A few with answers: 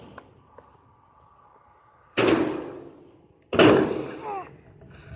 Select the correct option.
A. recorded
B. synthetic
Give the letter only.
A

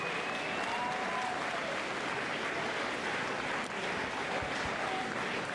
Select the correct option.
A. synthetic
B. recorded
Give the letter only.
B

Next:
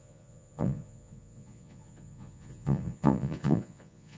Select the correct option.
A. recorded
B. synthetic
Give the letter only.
B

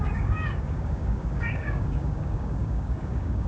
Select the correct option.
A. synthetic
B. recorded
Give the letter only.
A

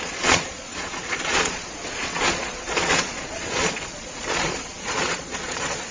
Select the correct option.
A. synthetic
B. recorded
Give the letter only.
A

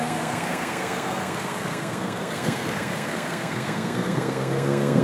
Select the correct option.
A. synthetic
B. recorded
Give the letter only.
A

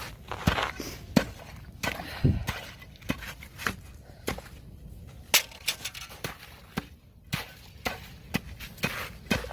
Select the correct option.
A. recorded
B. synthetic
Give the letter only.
A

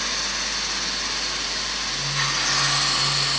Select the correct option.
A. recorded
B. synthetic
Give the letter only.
A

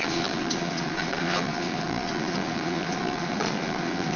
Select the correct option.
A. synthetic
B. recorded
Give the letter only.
A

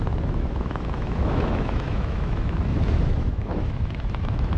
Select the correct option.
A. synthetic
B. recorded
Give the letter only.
A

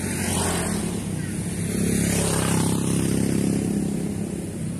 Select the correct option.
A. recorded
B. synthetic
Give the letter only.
A